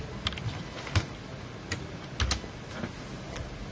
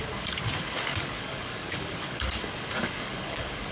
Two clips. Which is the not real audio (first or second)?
second